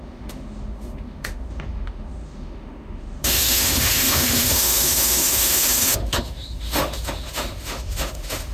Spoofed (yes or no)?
yes